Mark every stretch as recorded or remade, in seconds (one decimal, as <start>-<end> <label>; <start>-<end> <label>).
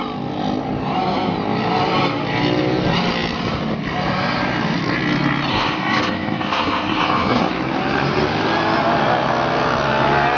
0.0-5.5 recorded; 5.5-7.5 remade; 7.5-10.4 recorded